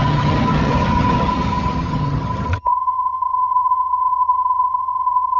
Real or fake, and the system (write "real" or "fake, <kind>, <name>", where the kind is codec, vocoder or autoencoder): fake, vocoder, HiFi-GAN